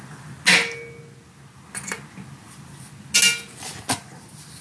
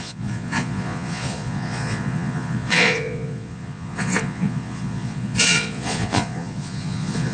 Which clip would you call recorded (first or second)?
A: first